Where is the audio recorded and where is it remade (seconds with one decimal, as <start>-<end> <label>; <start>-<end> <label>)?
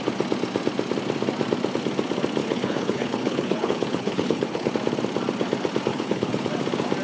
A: 0.0-2.4 recorded; 2.4-4.7 remade; 4.7-5.9 recorded; 5.9-6.5 remade; 6.5-7.0 recorded